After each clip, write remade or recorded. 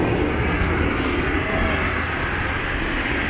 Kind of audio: recorded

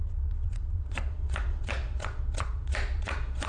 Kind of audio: remade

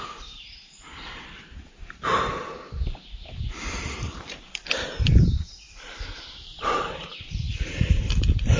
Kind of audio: remade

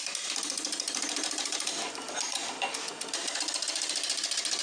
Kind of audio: remade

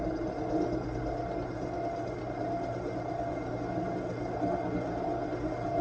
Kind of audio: recorded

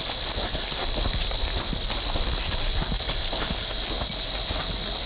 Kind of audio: recorded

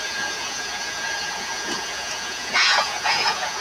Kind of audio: remade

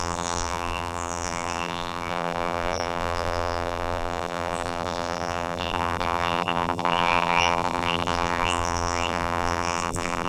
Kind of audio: remade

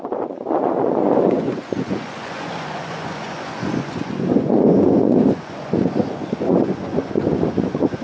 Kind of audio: remade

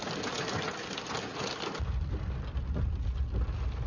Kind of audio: recorded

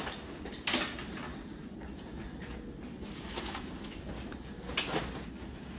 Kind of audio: recorded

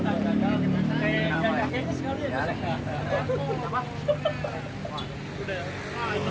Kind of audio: recorded